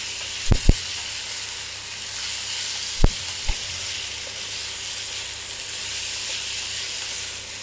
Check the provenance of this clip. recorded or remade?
recorded